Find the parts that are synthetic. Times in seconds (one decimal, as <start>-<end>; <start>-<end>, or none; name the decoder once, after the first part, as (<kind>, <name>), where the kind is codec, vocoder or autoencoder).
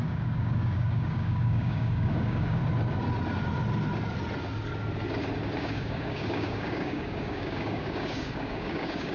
0.0-2.6 (codec, DAC); 5.6-9.1